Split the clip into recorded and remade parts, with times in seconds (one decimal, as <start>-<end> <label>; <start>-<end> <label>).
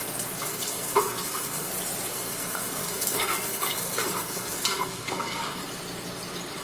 0.0-0.5 recorded; 0.5-1.7 remade; 1.7-2.1 recorded; 2.1-5.6 remade; 5.6-6.6 recorded